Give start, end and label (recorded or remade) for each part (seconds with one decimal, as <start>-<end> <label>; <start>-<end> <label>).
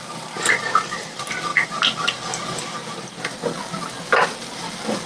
0.0-5.1 recorded